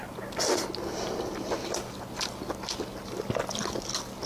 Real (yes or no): yes